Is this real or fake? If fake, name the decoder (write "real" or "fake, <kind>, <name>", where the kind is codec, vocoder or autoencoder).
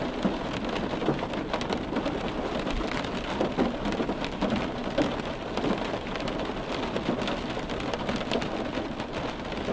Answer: real